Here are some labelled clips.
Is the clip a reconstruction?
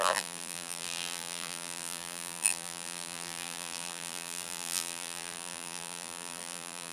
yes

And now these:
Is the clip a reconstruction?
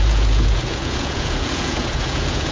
yes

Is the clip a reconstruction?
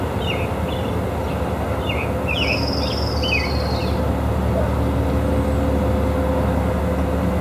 no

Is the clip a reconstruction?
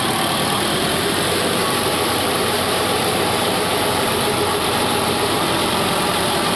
yes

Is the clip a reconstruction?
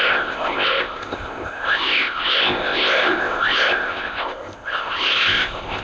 yes